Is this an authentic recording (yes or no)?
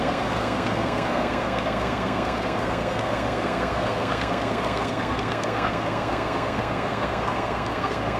no